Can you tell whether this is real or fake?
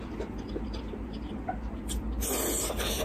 real